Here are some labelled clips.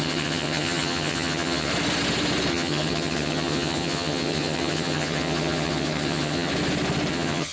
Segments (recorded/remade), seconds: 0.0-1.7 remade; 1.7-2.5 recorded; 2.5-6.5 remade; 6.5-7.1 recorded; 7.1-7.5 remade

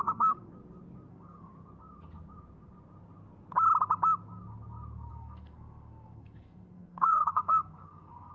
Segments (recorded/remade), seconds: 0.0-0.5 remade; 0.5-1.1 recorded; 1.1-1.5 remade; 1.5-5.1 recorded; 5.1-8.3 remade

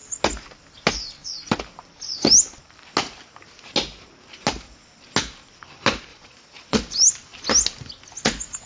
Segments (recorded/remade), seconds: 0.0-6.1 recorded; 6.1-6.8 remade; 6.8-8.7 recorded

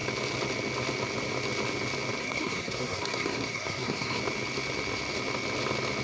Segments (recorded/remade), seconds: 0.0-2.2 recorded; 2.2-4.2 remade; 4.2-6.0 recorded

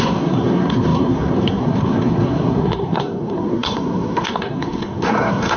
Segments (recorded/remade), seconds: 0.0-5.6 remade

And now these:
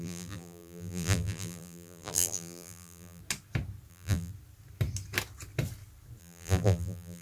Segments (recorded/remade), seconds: 0.0-3.2 remade; 3.2-3.9 recorded; 3.9-4.3 remade; 4.3-6.2 recorded; 6.2-7.2 remade

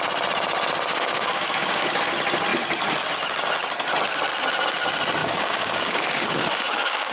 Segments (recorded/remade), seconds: 0.0-0.9 recorded; 0.9-2.0 remade; 2.0-5.2 recorded; 5.2-7.1 remade